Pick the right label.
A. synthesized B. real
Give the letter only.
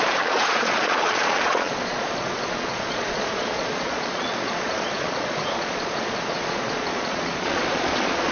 A